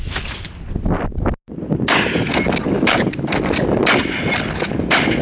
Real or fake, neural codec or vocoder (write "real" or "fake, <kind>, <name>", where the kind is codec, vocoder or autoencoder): real